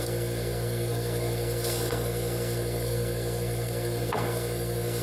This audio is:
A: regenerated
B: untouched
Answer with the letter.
A